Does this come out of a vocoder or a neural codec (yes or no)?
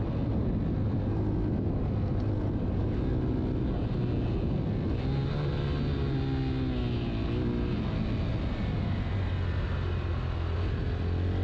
no